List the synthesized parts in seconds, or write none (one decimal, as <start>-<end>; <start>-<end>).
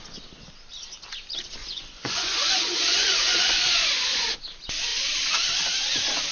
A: 1.6-4.3